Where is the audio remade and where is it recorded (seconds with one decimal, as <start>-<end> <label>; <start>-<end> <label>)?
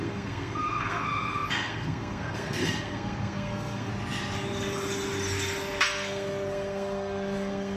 0.0-3.9 remade; 3.9-5.8 recorded; 5.8-7.8 remade